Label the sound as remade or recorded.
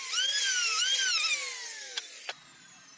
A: recorded